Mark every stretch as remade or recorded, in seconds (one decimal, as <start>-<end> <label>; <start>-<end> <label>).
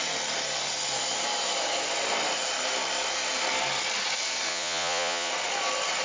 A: 0.0-4.5 recorded; 4.5-5.3 remade; 5.3-6.0 recorded